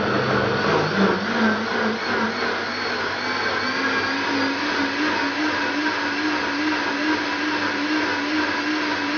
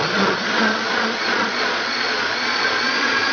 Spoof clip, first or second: second